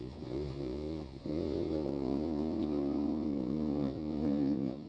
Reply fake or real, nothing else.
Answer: fake